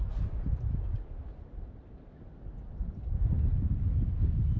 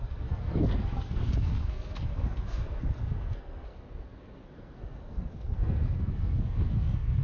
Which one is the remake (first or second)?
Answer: second